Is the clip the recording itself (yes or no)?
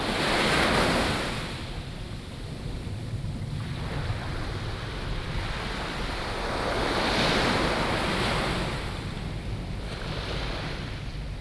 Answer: yes